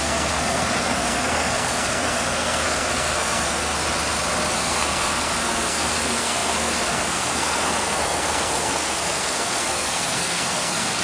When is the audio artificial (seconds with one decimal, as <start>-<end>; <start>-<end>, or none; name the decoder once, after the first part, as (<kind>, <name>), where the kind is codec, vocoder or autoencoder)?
0.0-3.8 (codec, SNAC); 4.5-11.0